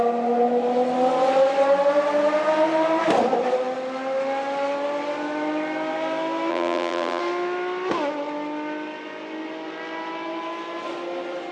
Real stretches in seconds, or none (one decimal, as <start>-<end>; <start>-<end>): 0.0-6.5; 7.2-11.5